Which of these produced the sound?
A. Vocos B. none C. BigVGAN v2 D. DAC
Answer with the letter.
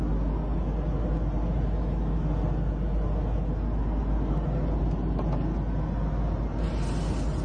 B